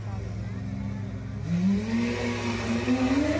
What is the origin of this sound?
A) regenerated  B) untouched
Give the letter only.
B